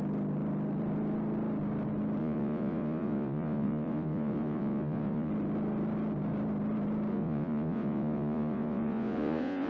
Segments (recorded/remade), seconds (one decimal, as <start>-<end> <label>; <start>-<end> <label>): 0.0-2.2 recorded; 2.2-5.3 remade; 5.3-7.1 recorded; 7.1-9.7 remade

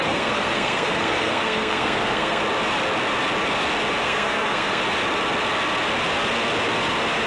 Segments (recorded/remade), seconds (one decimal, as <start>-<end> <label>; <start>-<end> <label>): 0.0-2.4 remade; 2.4-4.0 recorded; 4.0-4.8 remade; 4.8-7.3 recorded

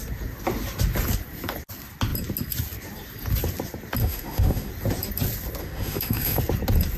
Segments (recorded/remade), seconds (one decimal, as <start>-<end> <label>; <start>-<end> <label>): 0.0-4.0 recorded; 4.0-4.7 remade; 4.7-5.6 recorded; 5.6-6.4 remade; 6.4-7.0 recorded

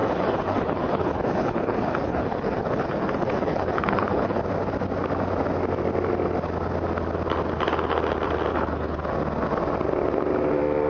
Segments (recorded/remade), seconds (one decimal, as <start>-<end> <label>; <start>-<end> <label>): 0.0-4.4 remade; 4.4-8.5 recorded; 8.5-9.1 remade; 9.1-10.9 recorded

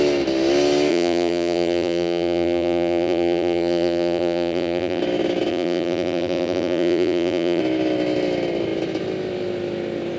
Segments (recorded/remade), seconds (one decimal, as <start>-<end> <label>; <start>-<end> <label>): 0.0-0.9 recorded; 0.9-5.0 remade; 5.0-5.5 recorded; 5.5-7.6 remade; 7.6-10.2 recorded

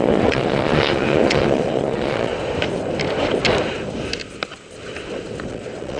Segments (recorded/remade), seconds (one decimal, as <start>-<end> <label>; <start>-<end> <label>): 0.0-2.3 remade; 2.3-5.5 recorded; 5.5-6.0 remade